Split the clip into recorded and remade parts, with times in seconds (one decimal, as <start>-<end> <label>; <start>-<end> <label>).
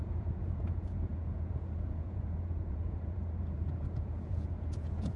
0.0-5.2 remade